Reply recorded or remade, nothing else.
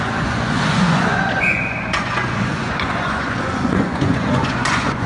remade